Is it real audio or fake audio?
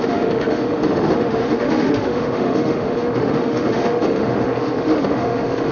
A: fake